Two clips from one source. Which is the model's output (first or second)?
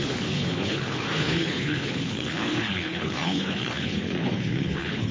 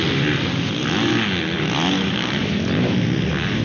first